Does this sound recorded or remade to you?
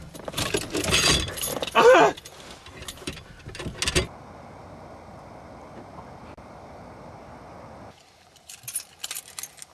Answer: recorded